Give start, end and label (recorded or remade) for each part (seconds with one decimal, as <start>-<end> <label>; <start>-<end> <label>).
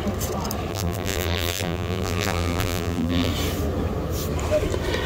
0.0-0.7 recorded; 0.7-3.3 remade; 3.3-5.1 recorded